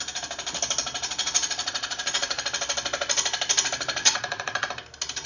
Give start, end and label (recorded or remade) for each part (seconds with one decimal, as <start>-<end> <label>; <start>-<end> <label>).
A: 0.0-1.6 recorded; 1.6-2.4 remade; 2.4-4.0 recorded; 4.0-4.7 remade; 4.7-5.3 recorded